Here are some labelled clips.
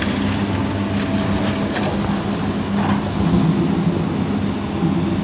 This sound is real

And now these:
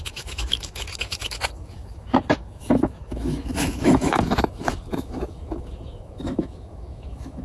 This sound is fake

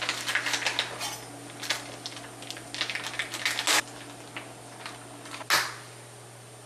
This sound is real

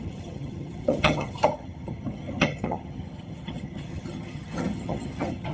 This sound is fake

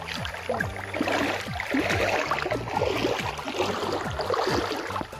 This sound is real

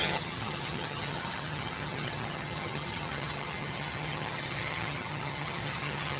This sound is fake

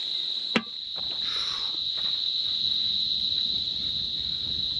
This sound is real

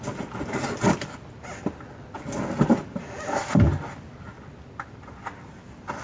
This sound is real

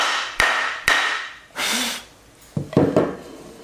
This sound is real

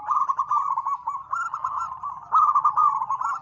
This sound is real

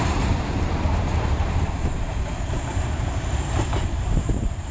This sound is fake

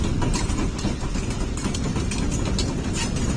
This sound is real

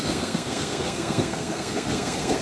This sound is fake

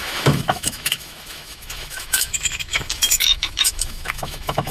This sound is fake